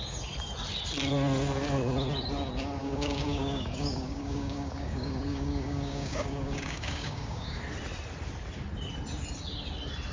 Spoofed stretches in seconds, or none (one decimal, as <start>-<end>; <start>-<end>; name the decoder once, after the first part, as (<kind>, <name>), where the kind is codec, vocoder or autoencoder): 2.8-7.6 (codec, DAC)